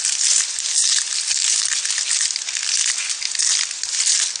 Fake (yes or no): no